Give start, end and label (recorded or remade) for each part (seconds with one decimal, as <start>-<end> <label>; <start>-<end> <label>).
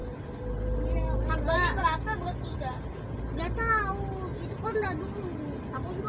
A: 0.0-6.1 recorded